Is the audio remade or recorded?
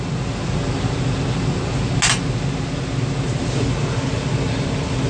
recorded